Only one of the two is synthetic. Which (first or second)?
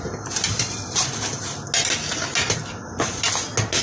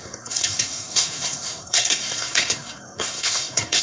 second